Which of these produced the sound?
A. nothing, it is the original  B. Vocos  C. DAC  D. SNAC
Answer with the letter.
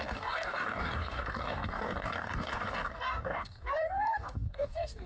C